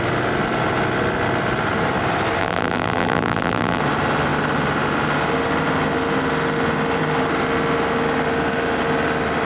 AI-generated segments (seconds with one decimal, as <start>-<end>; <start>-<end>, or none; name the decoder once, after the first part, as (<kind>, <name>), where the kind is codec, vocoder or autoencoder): 2.4-3.8 (vocoder, BigVGAN v2)